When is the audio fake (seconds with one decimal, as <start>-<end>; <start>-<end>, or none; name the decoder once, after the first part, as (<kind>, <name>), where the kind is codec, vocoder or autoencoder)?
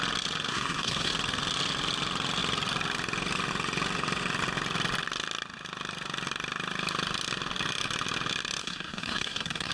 0.5-1.1 (codec, SNAC); 8.6-9.7